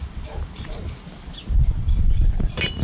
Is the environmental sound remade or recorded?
remade